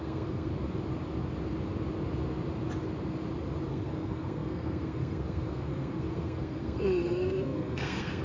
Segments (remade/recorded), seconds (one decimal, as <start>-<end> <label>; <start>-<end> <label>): 0.0-0.5 remade; 0.5-3.7 recorded; 3.7-8.2 remade